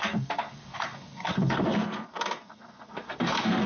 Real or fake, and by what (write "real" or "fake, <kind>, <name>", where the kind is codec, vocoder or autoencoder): fake, codec, SNAC